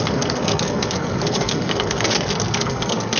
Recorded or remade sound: remade